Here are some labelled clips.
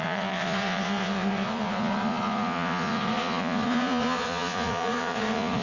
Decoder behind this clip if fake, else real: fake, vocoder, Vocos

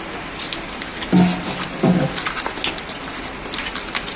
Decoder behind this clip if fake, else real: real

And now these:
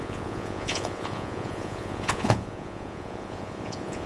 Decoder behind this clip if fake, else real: fake, vocoder, Vocos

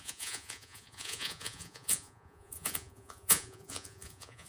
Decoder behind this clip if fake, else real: fake, vocoder, Vocos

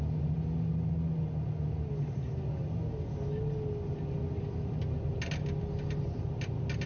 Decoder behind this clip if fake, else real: real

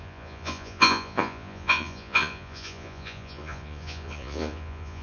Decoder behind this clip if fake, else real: fake, vocoder, Vocos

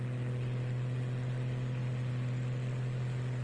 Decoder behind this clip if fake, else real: real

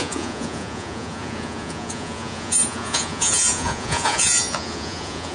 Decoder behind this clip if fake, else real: fake, vocoder, Vocos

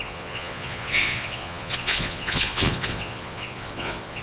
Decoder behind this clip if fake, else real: fake, vocoder, Vocos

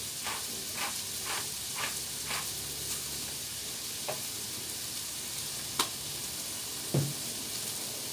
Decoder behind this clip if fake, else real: real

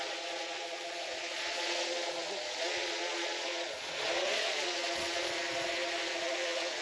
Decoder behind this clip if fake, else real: fake, vocoder, Vocos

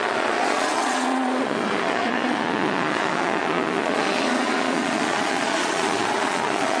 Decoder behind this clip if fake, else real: fake, vocoder, Vocos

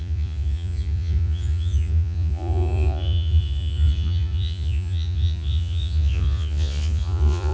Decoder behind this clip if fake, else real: fake, vocoder, Vocos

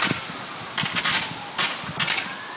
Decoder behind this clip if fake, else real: real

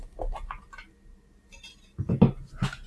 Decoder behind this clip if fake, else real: real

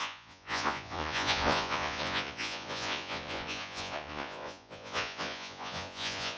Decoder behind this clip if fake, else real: fake, vocoder, Vocos